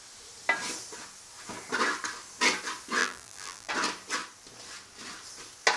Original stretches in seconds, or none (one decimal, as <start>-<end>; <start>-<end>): 0.0-3.0; 3.7-5.8

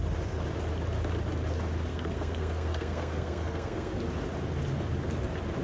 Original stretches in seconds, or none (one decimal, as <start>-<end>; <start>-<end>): 0.0-1.9; 4.0-5.6

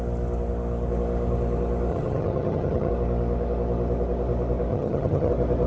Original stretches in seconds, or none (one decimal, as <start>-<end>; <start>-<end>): 0.0-1.9; 2.9-4.7; 5.3-5.7

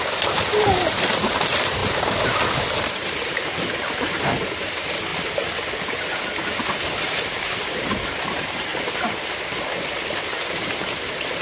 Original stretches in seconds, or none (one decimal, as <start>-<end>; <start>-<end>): 1.8-2.6; 5.1-7.5; 8.7-9.8

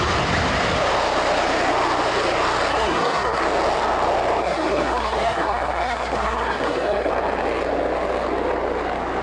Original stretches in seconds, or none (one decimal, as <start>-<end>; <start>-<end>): 0.0-2.7; 3.4-4.4; 7.1-9.2

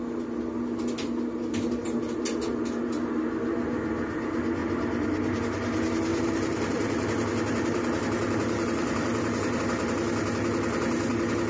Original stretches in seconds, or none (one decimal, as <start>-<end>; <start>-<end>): 0.0-4.6; 5.4-6.1; 9.6-11.5